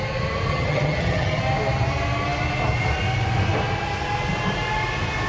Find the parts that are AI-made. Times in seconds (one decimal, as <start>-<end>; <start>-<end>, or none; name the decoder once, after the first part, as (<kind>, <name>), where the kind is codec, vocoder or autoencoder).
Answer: 0.5-1.4 (vocoder, HiFi-GAN)